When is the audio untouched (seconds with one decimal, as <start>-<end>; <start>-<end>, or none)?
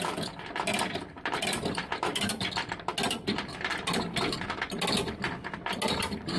0.0-6.4